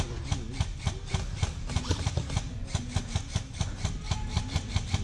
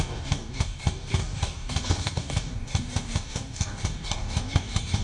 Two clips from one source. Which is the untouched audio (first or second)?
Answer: first